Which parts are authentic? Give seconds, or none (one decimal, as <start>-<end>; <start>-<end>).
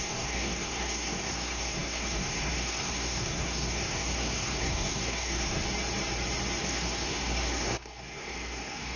5.6-6.6